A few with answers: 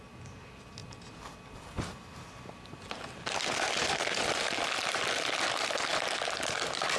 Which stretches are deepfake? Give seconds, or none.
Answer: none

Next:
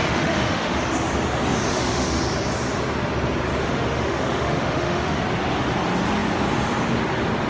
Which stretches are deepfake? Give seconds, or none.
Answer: 0.0-0.8 (autoencoder, DAC-VAE); 1.7-2.2; 3.6-5.2

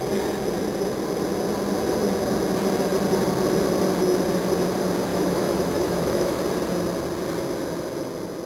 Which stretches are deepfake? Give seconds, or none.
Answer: 5.1-6.4 (autoencoder, DAC-VAE)

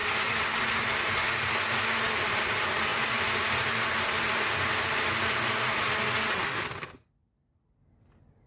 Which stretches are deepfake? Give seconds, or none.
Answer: none

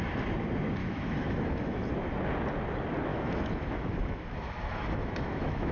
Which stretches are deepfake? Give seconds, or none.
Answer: 0.8-1.9 (autoencoder, DAC-VAE); 3.1-5.7